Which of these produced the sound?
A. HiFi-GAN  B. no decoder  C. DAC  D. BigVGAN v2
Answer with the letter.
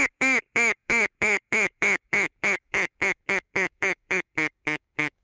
C